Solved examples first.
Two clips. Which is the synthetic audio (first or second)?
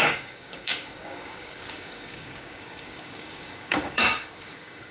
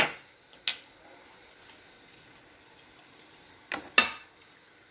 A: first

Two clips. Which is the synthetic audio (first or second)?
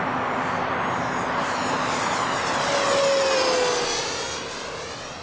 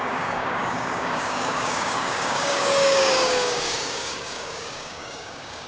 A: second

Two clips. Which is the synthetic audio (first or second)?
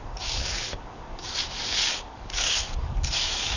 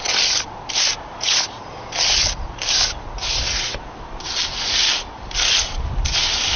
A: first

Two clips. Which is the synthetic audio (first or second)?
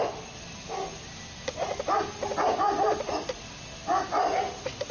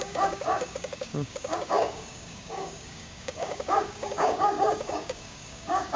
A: second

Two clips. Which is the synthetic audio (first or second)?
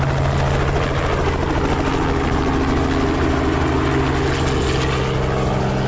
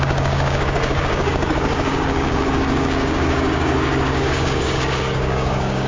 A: second